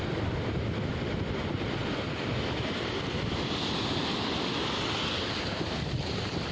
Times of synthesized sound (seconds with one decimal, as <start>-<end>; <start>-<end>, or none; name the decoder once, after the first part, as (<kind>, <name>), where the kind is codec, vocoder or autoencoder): 1.8-4.0 (vocoder, BigVGAN v2)